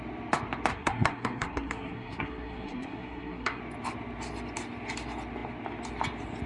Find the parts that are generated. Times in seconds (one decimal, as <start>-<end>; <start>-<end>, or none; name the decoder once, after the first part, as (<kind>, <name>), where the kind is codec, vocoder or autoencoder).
0.7-3.6 (codec, SNAC)